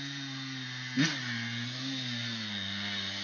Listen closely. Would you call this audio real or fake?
real